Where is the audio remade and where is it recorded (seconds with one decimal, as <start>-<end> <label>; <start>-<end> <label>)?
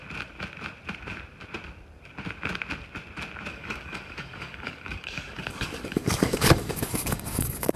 0.0-3.5 recorded; 3.5-7.8 remade